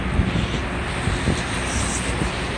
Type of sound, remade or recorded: recorded